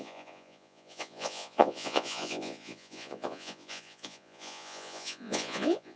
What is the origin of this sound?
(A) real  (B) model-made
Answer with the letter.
B